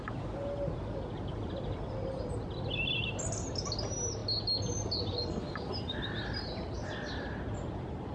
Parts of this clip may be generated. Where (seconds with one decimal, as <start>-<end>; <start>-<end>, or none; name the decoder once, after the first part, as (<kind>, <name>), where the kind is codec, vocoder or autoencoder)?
1.3-3.2 (vocoder, BigVGAN v2)